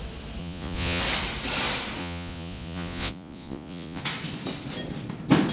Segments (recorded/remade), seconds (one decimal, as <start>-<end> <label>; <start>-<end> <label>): 0.0-0.4 recorded; 0.4-1.0 remade; 1.0-2.0 recorded; 2.0-4.0 remade; 4.0-5.5 recorded